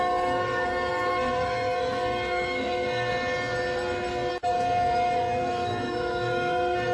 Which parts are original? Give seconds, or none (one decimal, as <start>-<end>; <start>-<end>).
3.1-4.3